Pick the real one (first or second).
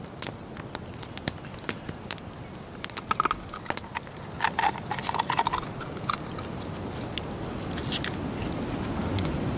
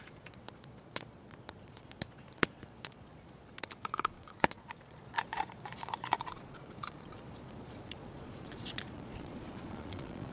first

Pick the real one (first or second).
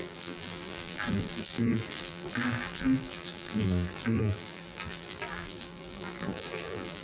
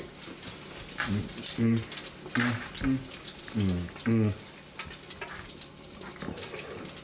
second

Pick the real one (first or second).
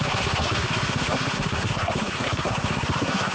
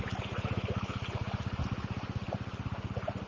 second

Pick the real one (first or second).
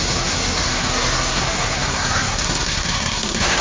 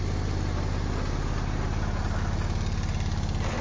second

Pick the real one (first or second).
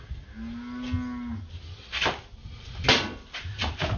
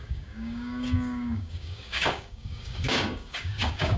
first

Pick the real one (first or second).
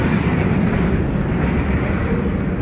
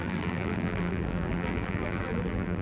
first